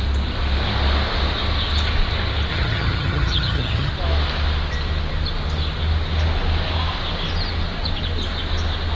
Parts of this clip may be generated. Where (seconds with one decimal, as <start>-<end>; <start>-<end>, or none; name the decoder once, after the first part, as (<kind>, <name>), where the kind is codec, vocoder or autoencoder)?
2.5-3.9 (vocoder, HiFi-GAN)